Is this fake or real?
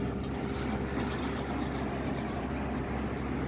real